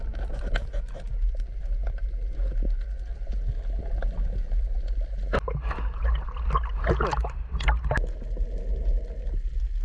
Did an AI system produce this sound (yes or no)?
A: no